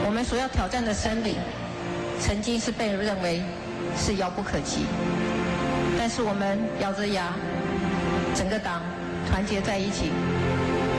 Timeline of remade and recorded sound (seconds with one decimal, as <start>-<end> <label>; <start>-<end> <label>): 0.0-1.0 recorded; 1.0-1.8 remade; 1.8-11.0 recorded